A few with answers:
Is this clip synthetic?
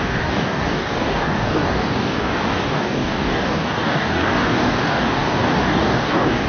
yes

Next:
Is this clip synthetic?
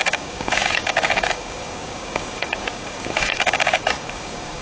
yes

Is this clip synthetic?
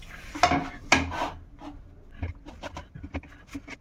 no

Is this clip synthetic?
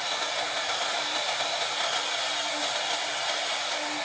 no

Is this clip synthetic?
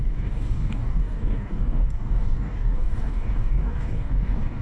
yes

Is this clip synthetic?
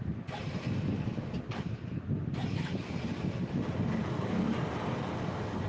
no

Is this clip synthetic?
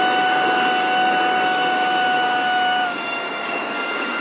yes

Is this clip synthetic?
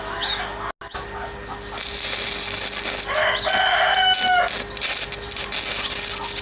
no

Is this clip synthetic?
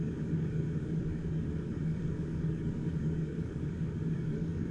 yes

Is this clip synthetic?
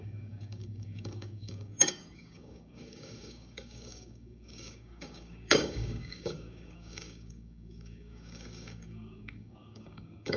yes